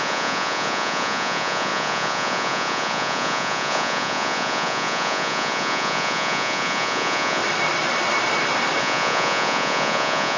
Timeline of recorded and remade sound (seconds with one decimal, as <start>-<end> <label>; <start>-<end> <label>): 0.0-7.4 remade; 7.4-8.8 recorded; 8.8-10.4 remade